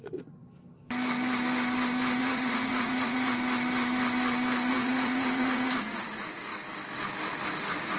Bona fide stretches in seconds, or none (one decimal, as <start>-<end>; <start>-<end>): 0.4-2.2; 3.3-4.7; 6.5-7.5